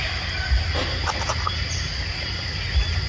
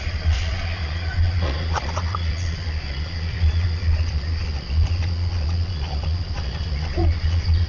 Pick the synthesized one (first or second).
second